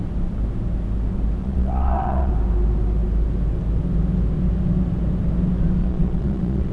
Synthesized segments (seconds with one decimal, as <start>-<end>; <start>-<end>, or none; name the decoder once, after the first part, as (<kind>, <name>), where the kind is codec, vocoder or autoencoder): 1.4-2.3 (vocoder, Vocos); 5.8-6.7

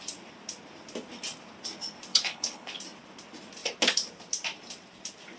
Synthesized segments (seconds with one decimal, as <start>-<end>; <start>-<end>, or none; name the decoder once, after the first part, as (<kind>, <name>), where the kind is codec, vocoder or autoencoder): 2.1-2.8 (codec, HILCodec)

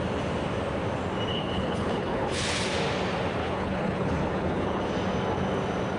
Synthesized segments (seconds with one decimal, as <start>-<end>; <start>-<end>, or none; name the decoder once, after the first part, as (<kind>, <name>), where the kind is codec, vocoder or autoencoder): 1.3-2.6 (codec, HILCodec); 3.4-4.9

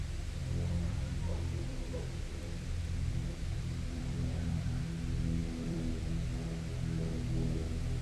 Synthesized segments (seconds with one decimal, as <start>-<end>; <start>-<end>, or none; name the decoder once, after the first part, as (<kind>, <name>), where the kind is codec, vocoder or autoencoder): 0.4-4.8 (vocoder, BigVGAN v2); 5.4-6.1

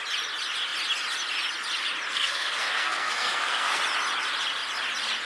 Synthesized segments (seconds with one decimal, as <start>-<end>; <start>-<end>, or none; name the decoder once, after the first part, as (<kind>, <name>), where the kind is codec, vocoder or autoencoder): 2.1-3.8 (codec, SNAC)